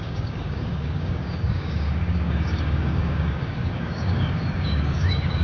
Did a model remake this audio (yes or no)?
yes